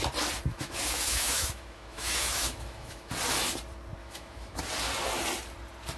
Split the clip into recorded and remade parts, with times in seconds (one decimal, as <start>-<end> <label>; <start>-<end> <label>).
0.0-0.5 recorded; 0.5-3.1 remade; 3.1-4.0 recorded; 4.0-4.6 remade; 4.6-6.0 recorded